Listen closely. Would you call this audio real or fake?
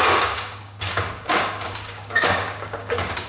fake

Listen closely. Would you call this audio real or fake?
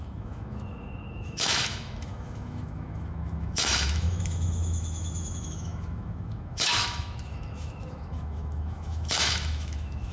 fake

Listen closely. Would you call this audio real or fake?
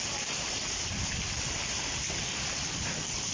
fake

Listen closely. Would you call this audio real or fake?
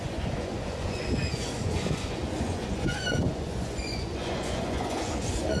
fake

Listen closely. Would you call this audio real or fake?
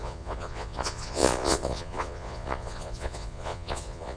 fake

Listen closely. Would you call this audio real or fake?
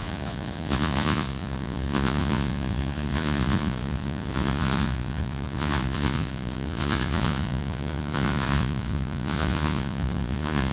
fake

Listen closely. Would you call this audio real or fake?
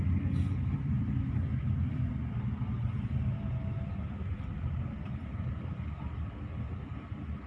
real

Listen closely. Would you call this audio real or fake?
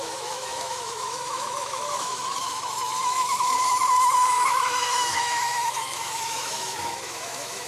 fake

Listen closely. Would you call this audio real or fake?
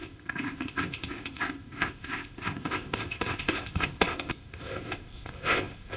fake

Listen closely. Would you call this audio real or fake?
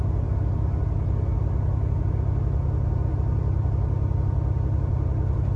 real